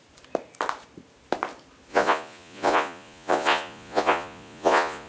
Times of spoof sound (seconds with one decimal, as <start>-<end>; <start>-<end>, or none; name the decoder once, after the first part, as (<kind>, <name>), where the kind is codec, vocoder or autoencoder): 1.9-5.1 (vocoder, Vocos)